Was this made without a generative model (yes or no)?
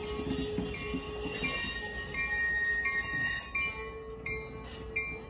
yes